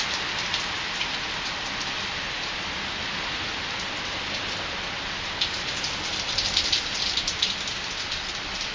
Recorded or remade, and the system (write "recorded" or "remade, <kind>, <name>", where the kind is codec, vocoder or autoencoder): recorded